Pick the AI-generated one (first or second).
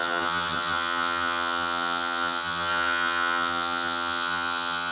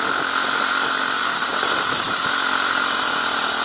first